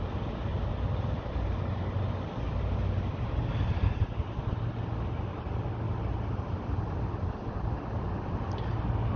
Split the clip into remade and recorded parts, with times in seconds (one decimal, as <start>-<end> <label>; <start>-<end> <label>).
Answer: 0.0-9.2 recorded